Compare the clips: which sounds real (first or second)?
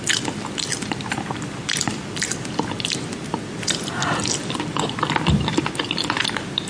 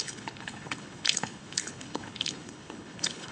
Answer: first